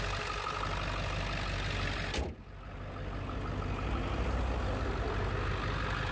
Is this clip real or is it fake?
real